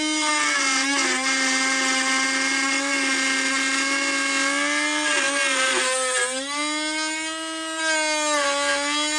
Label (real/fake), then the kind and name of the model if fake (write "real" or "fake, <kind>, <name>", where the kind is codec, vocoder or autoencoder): real